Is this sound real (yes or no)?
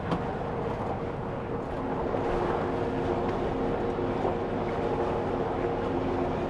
yes